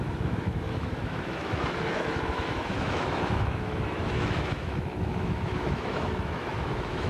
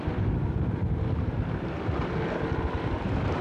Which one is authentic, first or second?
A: second